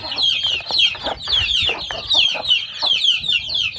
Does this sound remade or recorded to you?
recorded